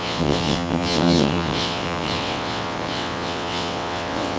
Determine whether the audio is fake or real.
fake